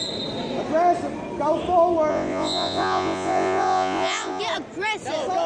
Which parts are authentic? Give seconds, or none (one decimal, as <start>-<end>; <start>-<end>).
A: 0.0-2.1; 4.4-5.5